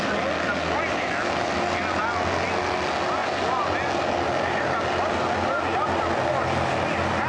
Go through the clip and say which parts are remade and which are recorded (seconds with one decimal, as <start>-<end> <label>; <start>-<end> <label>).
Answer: 0.0-7.3 recorded